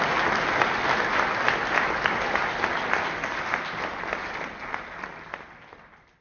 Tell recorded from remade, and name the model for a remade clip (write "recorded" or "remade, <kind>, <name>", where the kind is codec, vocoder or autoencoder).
recorded